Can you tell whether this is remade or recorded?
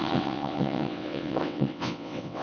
remade